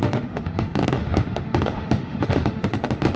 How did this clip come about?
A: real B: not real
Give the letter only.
B